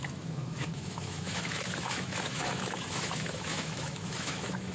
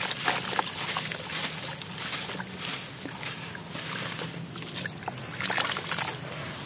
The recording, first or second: second